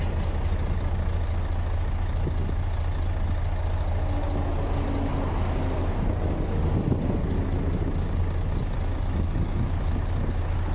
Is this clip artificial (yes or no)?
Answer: no